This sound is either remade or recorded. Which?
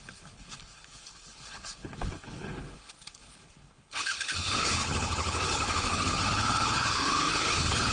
remade